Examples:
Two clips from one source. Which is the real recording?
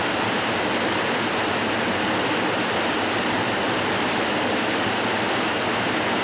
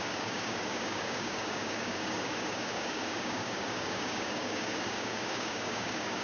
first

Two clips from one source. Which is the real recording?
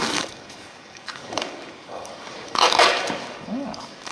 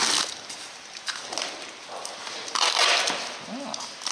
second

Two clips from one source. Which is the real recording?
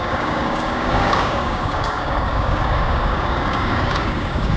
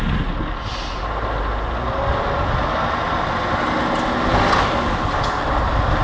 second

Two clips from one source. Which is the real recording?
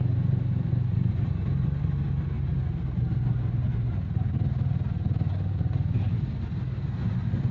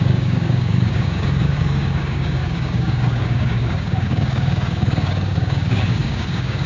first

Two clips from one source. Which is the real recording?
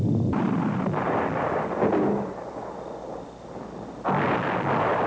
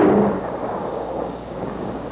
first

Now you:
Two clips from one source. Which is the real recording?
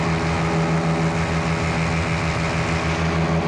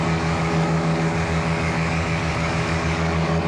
first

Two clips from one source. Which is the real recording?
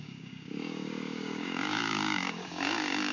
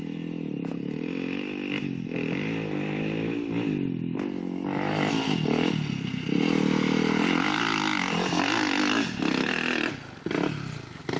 second